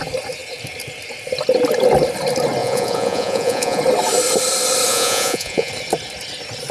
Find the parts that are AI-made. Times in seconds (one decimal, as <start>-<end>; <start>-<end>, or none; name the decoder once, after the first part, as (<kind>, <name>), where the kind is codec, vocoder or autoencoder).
2.6-3.8 (vocoder, Vocos); 4.9-5.7